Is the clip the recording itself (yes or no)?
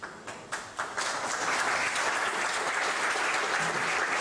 yes